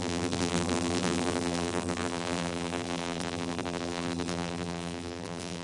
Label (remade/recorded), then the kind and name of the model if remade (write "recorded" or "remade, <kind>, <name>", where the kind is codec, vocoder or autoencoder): remade, vocoder, BigVGAN v2